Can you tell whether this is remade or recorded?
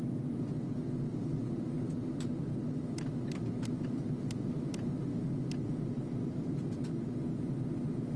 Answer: recorded